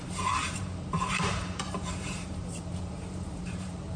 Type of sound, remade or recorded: remade